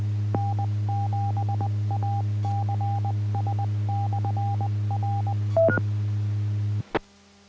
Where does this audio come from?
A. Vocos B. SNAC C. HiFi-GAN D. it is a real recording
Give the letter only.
D